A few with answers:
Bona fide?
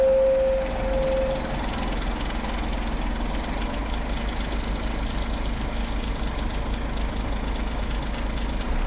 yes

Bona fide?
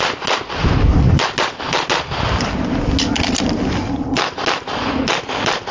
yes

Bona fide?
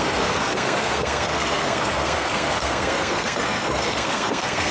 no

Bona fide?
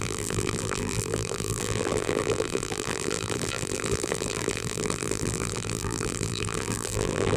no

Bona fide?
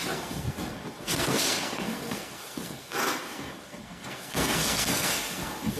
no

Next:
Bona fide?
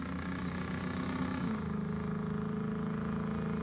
yes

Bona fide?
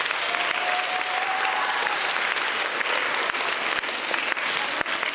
yes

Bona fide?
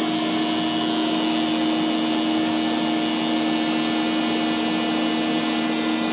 yes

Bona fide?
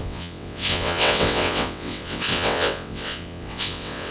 no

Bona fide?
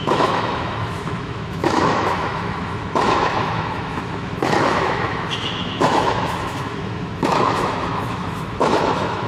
no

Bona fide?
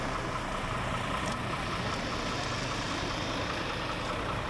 no